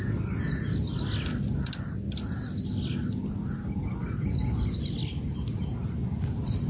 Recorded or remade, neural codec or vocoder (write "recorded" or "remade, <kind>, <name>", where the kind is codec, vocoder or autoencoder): recorded